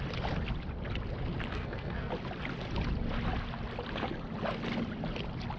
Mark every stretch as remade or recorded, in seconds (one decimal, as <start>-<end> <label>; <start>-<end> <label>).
0.0-1.5 recorded; 1.5-2.1 remade; 2.1-5.6 recorded